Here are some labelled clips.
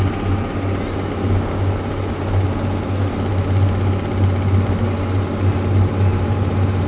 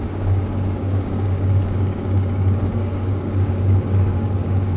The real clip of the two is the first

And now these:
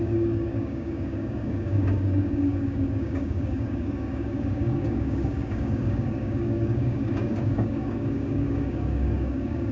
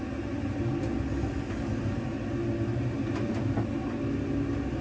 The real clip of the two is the second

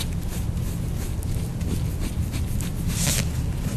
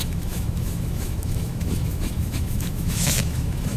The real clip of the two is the first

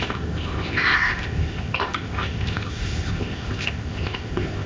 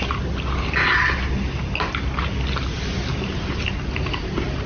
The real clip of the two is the second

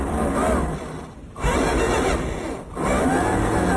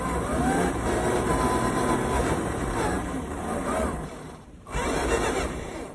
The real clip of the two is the first